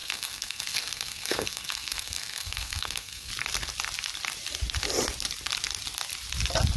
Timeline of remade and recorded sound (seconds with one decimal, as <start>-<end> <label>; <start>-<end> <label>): 0.0-3.3 remade; 3.3-6.8 recorded